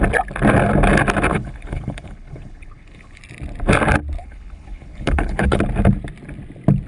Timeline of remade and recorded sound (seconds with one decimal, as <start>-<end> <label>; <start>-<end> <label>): 0.0-1.3 recorded; 1.3-3.2 remade; 3.2-4.2 recorded; 4.2-5.6 remade; 5.6-6.9 recorded